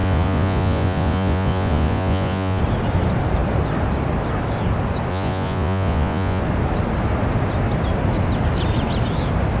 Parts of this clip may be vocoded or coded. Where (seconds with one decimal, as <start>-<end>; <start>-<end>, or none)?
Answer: 0.0-2.6; 5.1-6.4